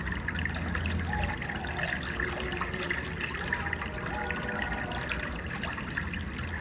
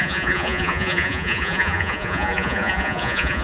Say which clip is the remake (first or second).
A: second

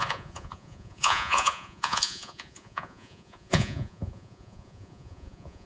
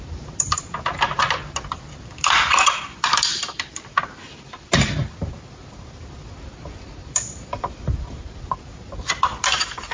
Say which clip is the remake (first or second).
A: first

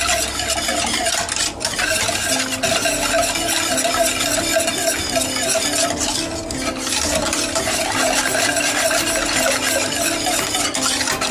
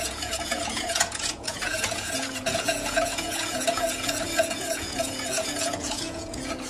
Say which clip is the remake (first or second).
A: second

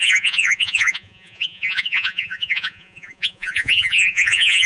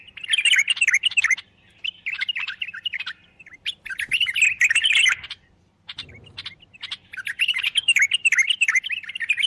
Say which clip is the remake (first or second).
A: first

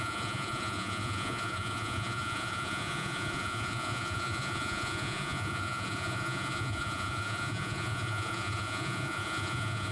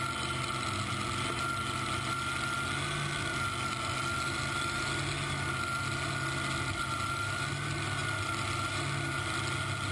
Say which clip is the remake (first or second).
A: first